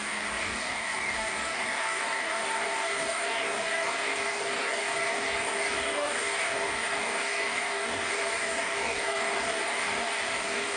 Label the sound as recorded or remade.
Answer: remade